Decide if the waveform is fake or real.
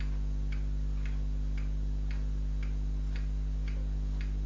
real